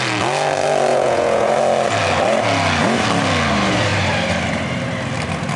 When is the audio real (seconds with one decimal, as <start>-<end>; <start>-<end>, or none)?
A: 0.0-0.9; 1.5-5.6